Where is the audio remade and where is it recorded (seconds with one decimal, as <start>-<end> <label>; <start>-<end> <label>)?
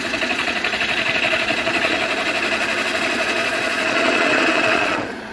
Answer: 0.0-2.0 remade; 2.0-3.0 recorded; 3.0-5.3 remade